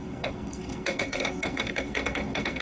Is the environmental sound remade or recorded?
remade